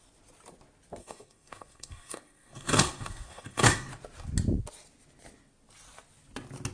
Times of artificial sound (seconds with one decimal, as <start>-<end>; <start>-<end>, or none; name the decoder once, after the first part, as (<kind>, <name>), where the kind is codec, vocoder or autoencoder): 1.0-3.9 (codec, SNAC)